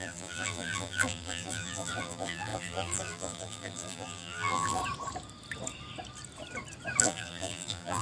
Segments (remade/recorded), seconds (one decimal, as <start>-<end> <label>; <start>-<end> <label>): 0.0-4.8 remade; 4.8-7.0 recorded; 7.0-8.0 remade